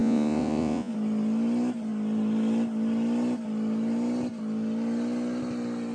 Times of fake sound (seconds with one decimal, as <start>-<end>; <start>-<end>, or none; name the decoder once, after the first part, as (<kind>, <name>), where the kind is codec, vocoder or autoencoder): 0.0-0.9 (vocoder, Vocos)